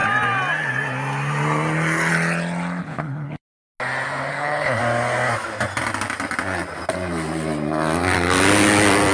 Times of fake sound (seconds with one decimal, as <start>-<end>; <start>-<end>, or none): 2.8-3.4; 4.3-4.8